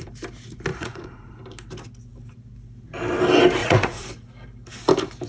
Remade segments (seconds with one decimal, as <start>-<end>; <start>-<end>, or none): 0.7-1.3; 3.6-4.1